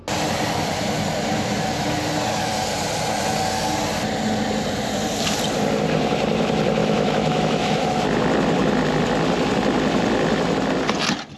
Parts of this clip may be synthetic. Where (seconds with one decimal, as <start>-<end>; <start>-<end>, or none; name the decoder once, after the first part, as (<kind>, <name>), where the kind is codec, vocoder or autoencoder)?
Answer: 6.8-8.0 (autoencoder, DAC-VAE)